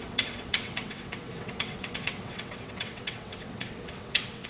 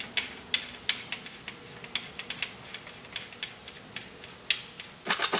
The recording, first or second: second